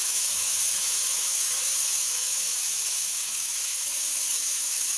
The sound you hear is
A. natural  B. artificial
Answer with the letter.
B